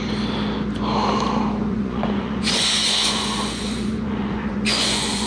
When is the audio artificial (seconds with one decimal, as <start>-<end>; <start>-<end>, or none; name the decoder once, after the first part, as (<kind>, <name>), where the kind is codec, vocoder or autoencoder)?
1.7-5.3 (vocoder, Vocos)